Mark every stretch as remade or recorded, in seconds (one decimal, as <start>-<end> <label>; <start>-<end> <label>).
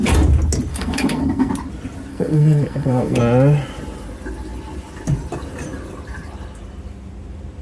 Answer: 0.0-0.7 recorded; 0.7-1.5 remade; 1.5-2.1 recorded; 2.1-3.2 remade; 3.2-7.6 recorded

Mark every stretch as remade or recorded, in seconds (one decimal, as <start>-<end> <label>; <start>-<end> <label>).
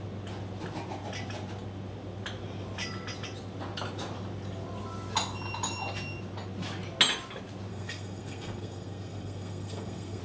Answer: 0.0-7.7 recorded; 7.7-10.2 remade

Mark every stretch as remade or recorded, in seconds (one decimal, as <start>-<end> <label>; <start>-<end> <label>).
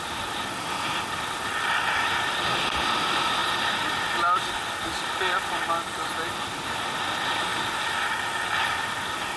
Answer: 0.0-9.4 recorded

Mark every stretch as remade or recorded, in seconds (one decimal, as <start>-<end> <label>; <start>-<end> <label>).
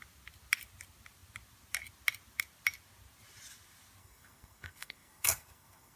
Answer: 0.0-4.0 recorded; 4.0-6.0 remade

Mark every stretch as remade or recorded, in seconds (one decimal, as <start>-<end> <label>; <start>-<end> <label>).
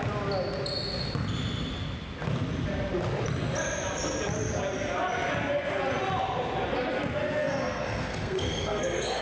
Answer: 0.0-7.4 recorded; 7.4-9.2 remade